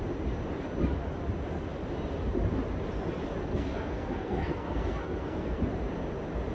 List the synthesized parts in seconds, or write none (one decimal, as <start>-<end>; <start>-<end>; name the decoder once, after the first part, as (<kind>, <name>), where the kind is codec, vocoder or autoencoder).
3.5-5.6 (codec, SNAC)